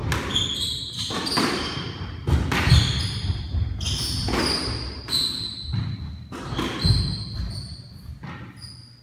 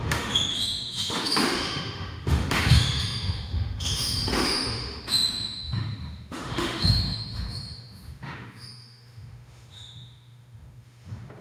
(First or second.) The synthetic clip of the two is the second